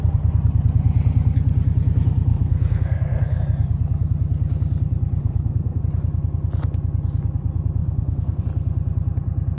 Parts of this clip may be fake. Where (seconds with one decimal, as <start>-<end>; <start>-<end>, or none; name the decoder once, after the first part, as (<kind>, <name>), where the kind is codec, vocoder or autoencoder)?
2.3-3.4 (codec, SNAC); 5.2-5.8; 7.8-8.4

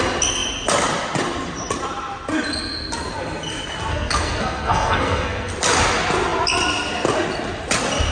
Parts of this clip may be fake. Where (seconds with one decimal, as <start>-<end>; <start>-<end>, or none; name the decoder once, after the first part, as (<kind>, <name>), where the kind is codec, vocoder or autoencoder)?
3.9-5.5 (codec, SNAC)

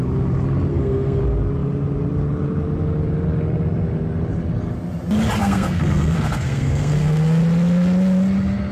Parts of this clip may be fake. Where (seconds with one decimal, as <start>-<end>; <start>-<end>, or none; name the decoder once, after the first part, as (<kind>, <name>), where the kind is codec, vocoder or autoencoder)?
0.7-1.2 (codec, SNAC); 5.4-7.4

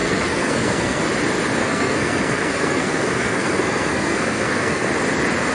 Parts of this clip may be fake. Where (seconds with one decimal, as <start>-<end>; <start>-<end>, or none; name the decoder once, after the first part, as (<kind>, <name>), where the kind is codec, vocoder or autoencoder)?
0.0-1.0 (codec, SNAC); 1.6-4.9

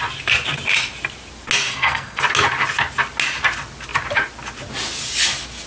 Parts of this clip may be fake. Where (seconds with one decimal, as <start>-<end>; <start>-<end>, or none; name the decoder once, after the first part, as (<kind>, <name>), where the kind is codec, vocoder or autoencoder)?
1.7-2.2 (codec, SNAC)

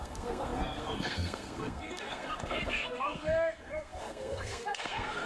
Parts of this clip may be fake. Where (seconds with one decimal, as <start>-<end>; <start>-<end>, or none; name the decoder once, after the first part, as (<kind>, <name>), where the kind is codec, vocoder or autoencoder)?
0.0-5.3 (codec, SNAC)

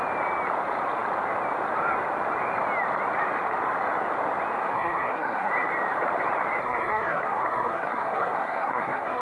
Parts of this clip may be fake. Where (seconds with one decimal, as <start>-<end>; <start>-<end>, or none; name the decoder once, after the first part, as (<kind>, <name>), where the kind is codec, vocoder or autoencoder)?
4.6-5.5 (codec, SNAC); 6.6-9.2

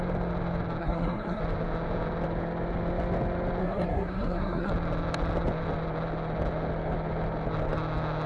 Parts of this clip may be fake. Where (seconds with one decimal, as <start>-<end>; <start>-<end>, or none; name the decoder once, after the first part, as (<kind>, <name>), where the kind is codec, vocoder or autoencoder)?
0.8-1.4 (codec, SNAC); 3.6-4.7